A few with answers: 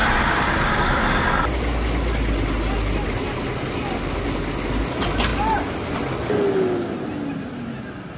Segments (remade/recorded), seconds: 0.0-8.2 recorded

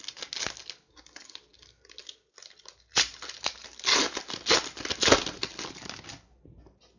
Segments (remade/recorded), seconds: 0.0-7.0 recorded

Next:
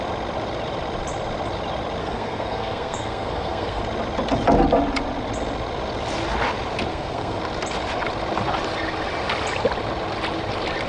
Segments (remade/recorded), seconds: 0.0-2.0 recorded; 2.0-3.8 remade; 3.8-6.9 recorded; 6.9-7.4 remade; 7.4-10.9 recorded

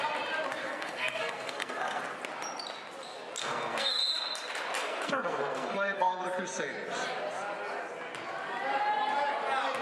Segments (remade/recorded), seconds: 0.0-0.6 recorded; 0.6-2.0 remade; 2.0-3.4 recorded; 3.4-4.0 remade; 4.0-4.8 recorded; 4.8-6.2 remade; 6.2-9.8 recorded

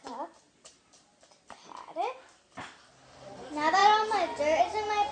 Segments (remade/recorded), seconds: 0.0-5.1 recorded